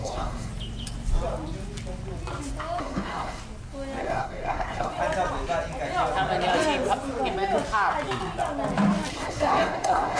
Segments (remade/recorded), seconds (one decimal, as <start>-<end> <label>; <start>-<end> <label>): 0.0-0.5 remade; 0.5-2.8 recorded; 2.8-3.4 remade; 3.4-4.0 recorded; 4.0-4.9 remade; 4.9-9.1 recorded; 9.1-10.2 remade